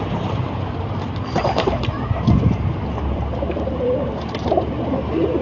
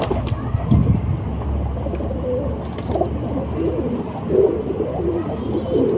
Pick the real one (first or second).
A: second